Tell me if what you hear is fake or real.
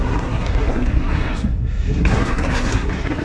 fake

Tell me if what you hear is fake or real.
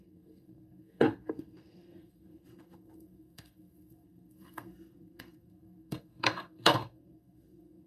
fake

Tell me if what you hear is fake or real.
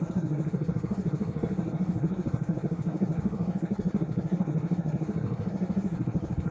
fake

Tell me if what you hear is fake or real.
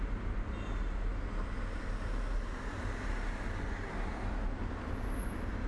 real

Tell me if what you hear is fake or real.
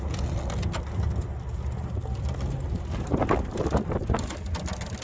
real